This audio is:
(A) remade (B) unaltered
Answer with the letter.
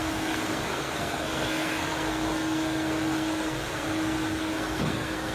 A